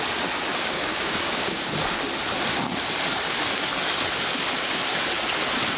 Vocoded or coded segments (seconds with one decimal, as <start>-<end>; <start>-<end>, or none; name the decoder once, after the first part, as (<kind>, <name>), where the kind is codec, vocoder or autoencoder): 0.5-1.7 (codec, DAC)